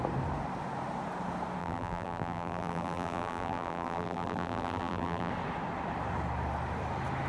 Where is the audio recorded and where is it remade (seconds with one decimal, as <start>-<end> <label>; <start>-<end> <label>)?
0.0-1.6 recorded; 1.6-5.3 remade; 5.3-7.3 recorded